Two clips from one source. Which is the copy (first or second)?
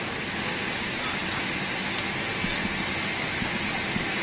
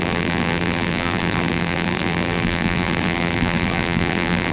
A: second